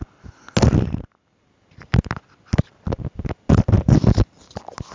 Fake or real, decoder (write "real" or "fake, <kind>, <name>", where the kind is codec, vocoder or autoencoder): real